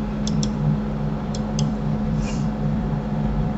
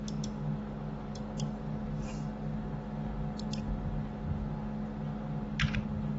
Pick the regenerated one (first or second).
first